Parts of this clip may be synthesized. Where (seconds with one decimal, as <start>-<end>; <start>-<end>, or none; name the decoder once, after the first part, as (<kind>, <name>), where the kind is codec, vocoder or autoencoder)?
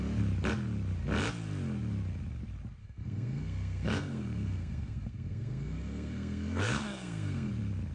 2.8-7.5 (codec, SNAC)